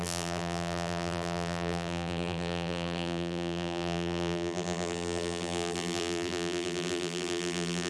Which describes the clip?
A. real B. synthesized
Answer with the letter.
B